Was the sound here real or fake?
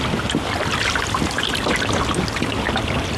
real